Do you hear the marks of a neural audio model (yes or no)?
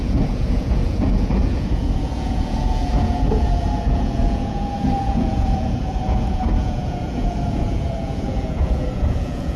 yes